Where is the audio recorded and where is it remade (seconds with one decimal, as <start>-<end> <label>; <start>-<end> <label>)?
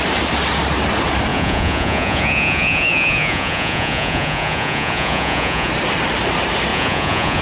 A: 0.0-1.3 recorded; 1.3-5.7 remade; 5.7-6.7 recorded; 6.7-7.4 remade